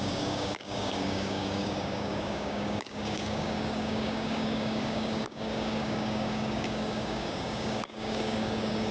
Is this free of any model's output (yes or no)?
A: no